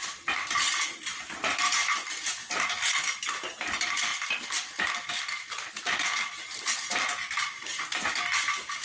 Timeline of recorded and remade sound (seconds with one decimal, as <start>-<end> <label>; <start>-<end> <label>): 0.0-8.8 recorded